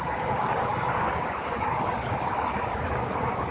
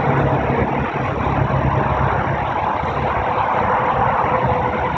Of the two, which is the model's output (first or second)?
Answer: first